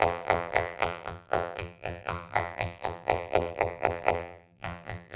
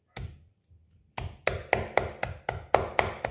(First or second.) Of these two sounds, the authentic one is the second